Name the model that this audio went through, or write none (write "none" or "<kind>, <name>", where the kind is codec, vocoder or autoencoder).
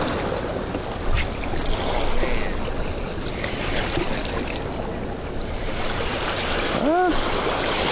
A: none